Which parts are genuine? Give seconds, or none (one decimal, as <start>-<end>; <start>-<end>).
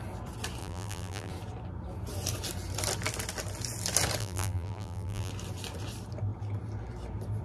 0.0-0.6; 1.3-4.2; 5.3-7.4